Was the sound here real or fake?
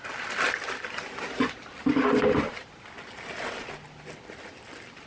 real